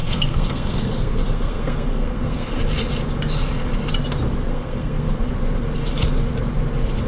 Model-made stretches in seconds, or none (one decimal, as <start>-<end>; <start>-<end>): 0.0-2.6; 4.5-5.3